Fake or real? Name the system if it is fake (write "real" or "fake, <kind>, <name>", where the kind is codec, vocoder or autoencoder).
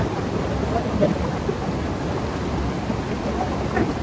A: real